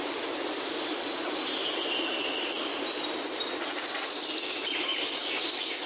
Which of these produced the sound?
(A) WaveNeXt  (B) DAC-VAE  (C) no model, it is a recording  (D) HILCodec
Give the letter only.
C